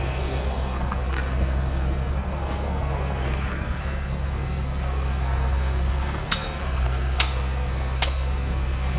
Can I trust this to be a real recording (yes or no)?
no